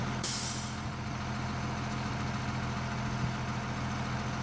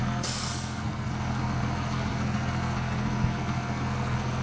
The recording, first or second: first